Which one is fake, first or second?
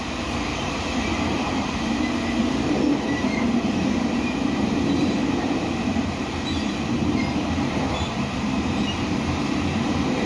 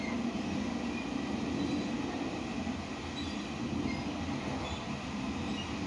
first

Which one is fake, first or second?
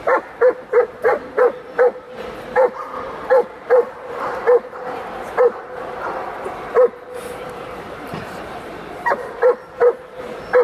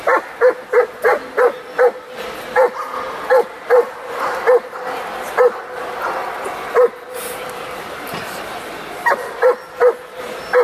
first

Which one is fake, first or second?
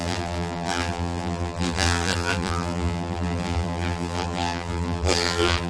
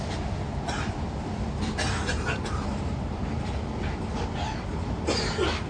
first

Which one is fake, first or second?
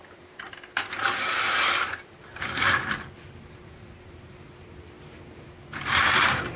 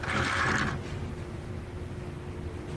first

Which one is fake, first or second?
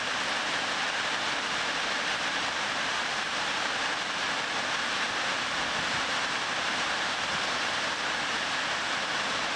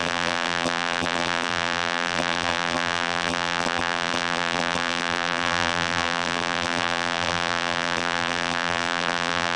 second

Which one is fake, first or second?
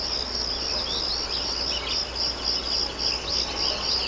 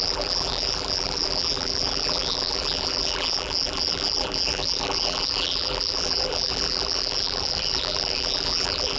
second